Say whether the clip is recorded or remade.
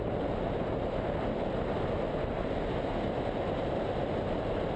recorded